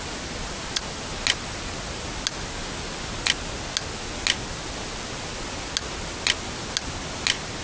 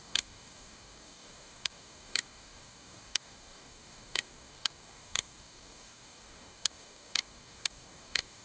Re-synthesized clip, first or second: second